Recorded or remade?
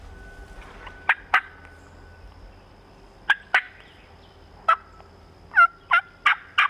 recorded